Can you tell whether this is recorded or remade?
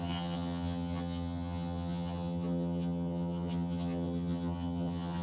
remade